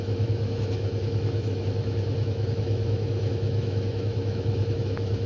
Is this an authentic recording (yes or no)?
no